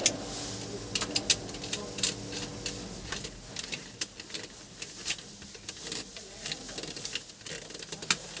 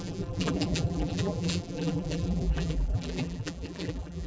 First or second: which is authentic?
first